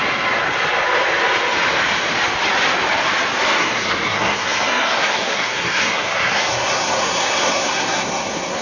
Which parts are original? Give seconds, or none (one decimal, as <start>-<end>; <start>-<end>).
0.0-3.6